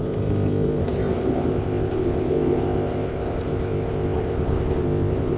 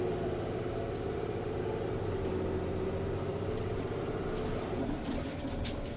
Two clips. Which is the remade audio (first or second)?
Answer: first